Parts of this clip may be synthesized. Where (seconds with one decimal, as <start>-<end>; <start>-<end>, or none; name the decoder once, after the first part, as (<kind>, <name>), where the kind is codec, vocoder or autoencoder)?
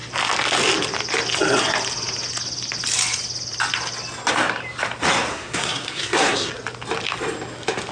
5.3-6.5 (codec, SNAC)